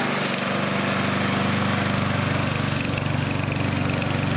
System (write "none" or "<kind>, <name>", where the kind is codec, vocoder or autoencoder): none